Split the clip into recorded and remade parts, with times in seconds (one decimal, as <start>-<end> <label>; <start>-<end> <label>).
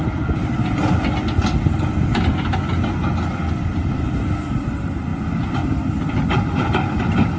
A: 0.0-7.4 recorded